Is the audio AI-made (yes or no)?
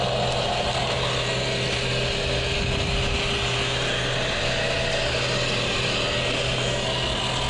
no